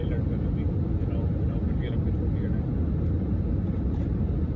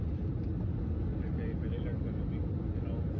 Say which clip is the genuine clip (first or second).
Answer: second